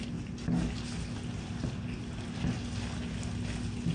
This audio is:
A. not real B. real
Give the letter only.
B